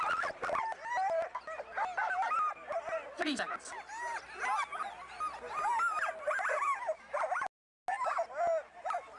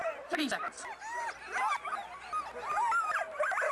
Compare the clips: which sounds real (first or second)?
first